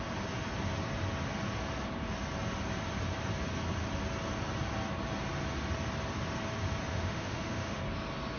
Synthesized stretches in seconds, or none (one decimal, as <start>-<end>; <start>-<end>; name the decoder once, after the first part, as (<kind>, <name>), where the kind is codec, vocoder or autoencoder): 6.9-7.8 (autoencoder, DAC-VAE)